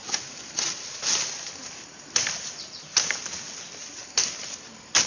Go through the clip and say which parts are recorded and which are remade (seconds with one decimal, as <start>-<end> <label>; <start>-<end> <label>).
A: 0.0-5.1 recorded